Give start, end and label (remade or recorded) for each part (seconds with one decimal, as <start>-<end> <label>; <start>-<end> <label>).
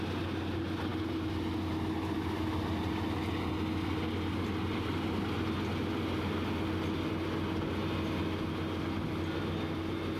0.0-10.2 recorded